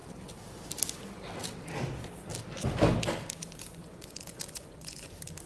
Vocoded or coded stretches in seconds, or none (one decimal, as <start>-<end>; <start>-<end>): 3.7-5.1